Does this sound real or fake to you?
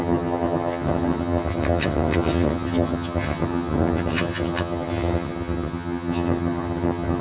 fake